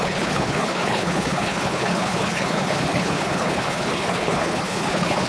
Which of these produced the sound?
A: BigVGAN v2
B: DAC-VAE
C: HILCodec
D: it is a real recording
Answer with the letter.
C